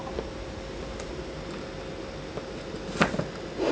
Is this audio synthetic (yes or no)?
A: no